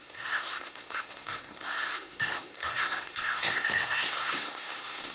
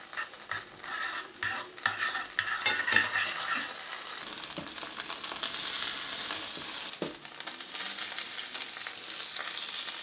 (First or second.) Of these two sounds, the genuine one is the second